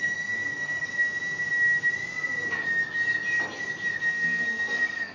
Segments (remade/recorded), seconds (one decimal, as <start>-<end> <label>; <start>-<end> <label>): 0.0-0.9 remade; 0.9-4.0 recorded; 4.0-5.1 remade